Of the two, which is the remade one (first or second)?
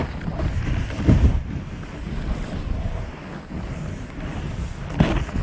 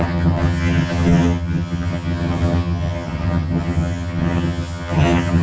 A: second